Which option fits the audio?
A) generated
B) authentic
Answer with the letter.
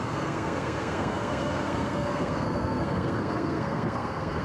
A